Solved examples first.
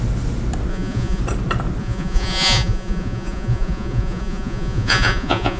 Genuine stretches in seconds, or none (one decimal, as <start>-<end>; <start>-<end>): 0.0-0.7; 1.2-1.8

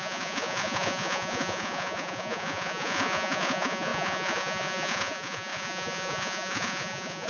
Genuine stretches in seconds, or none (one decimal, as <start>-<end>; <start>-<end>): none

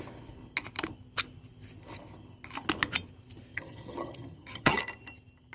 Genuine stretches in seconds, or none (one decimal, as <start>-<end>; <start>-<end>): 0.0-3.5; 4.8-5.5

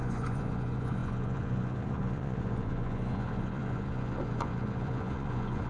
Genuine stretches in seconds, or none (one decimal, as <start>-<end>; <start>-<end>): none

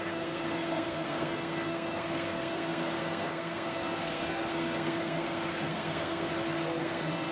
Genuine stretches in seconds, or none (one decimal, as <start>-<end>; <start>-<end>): 6.3-6.8